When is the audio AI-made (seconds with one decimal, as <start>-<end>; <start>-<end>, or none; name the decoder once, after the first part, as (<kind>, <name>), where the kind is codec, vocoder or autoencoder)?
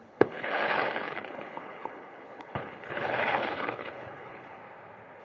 0.0-4.6 (codec, HILCodec)